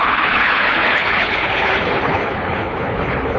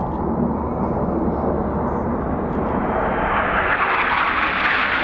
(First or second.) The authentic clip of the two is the second